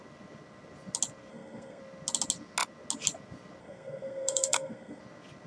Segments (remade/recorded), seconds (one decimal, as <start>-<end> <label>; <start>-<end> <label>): 0.0-1.3 recorded; 1.3-1.8 remade; 1.8-3.6 recorded; 3.6-5.0 remade; 5.0-5.5 recorded